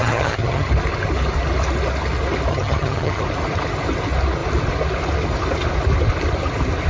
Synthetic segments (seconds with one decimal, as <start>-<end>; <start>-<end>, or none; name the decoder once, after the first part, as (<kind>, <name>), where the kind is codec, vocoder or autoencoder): 0.0-0.7 (vocoder, HiFi-GAN); 2.5-3.2